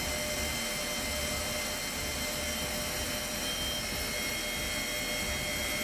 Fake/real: real